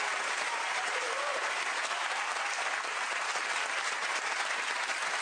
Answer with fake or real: real